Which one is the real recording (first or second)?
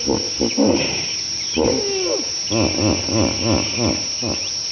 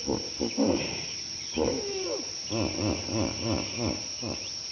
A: first